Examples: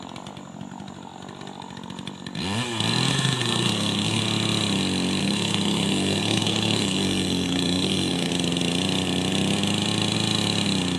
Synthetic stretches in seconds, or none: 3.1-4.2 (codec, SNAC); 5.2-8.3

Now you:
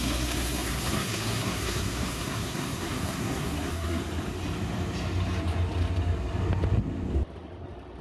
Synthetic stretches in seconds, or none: 0.0-4.0 (codec, SNAC)

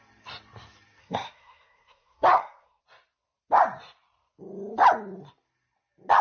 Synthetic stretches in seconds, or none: 1.0-2.8 (codec, SNAC)

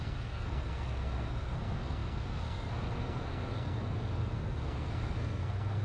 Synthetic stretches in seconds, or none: 0.0-5.8 (codec, SNAC)

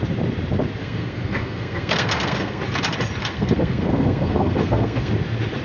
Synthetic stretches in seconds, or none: 0.8-2.6 (codec, SNAC); 3.2-5.1

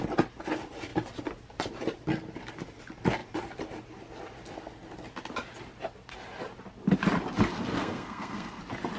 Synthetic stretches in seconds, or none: 7.8-8.6 (codec, SNAC)